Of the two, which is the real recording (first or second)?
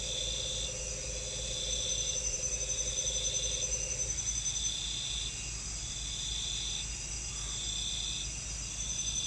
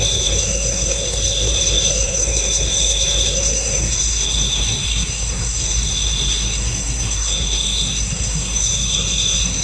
first